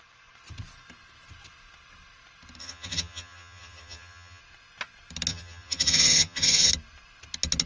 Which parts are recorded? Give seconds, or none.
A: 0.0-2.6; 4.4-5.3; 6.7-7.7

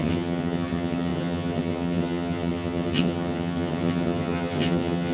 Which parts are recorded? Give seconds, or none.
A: none